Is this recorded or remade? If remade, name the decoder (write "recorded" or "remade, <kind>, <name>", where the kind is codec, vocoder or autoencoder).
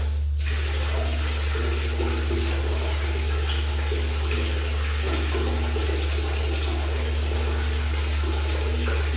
recorded